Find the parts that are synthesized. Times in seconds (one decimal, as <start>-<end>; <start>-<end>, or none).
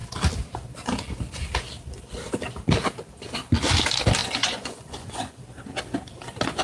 4.2-5.4